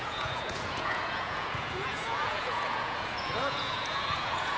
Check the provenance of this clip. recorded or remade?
remade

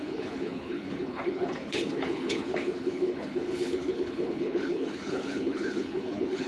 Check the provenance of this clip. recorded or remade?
remade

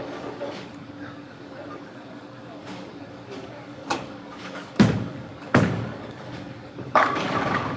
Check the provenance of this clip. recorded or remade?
remade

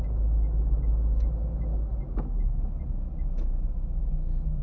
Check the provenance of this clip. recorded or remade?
recorded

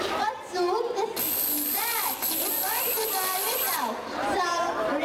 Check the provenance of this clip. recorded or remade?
recorded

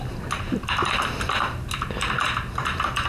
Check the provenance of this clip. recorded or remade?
recorded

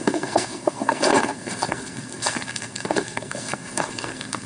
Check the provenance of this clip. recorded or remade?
remade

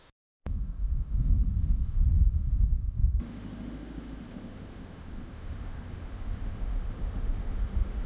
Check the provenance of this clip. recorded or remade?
remade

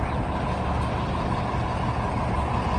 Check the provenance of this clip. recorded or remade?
recorded